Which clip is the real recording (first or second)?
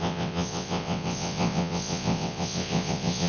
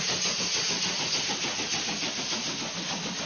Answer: second